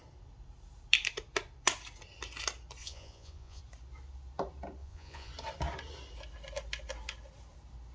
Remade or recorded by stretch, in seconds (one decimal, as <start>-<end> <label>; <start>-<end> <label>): 0.0-2.8 recorded; 2.8-3.6 remade; 3.6-4.8 recorded; 4.8-5.3 remade; 5.3-7.9 recorded